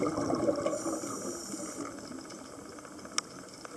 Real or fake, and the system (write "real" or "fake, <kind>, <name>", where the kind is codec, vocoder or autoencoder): real